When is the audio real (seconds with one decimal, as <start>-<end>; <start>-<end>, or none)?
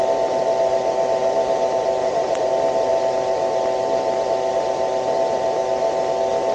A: 0.0-2.0; 2.5-6.5